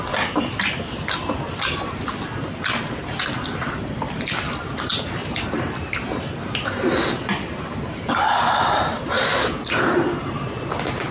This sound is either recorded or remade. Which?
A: recorded